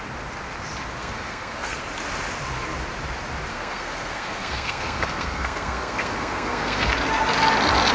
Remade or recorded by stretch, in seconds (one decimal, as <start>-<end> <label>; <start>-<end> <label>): 0.0-1.0 recorded; 1.0-1.8 remade; 1.8-3.5 recorded; 3.5-6.9 remade; 6.9-7.9 recorded